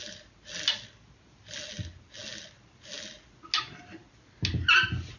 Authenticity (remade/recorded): recorded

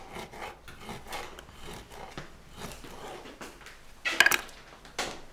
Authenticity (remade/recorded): recorded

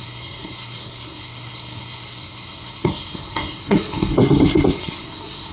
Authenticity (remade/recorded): remade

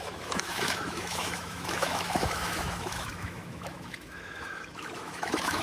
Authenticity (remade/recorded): remade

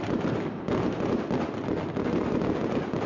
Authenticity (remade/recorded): recorded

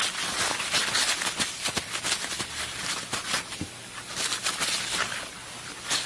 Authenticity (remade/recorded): recorded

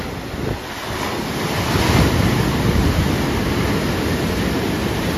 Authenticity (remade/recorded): recorded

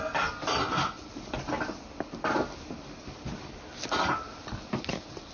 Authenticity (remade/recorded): recorded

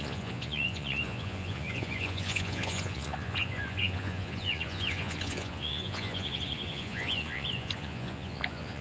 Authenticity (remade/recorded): remade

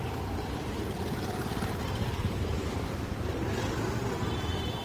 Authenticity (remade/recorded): remade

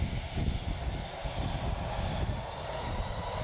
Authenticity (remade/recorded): recorded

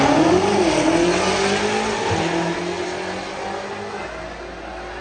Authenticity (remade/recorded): recorded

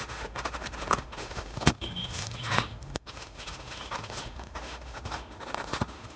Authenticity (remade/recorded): remade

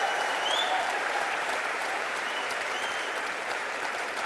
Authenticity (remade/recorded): remade